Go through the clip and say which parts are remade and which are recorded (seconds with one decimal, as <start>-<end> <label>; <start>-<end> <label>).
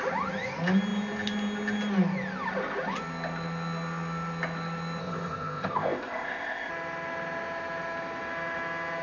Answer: 0.0-5.0 recorded; 5.0-6.7 remade; 6.7-9.0 recorded